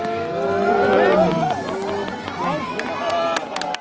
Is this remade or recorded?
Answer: recorded